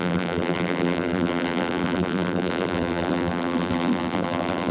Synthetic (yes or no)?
yes